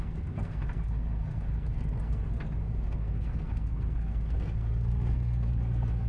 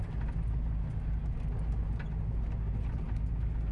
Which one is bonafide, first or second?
second